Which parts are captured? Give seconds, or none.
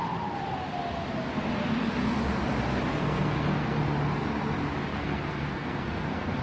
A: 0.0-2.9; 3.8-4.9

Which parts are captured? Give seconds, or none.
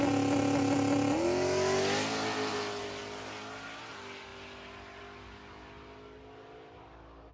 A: 0.0-7.3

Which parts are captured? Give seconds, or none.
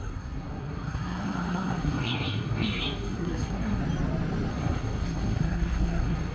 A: 3.8-4.5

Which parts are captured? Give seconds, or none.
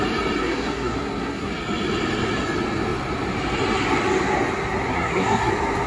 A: 0.0-0.4; 1.5-4.9; 5.5-5.9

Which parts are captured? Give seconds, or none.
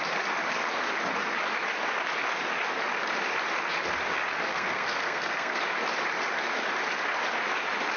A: 0.0-4.5; 5.6-8.0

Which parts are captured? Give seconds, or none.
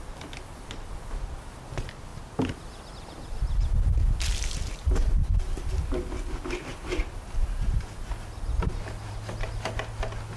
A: 0.0-10.4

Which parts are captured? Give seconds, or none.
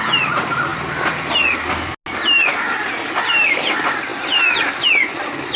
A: 0.0-5.6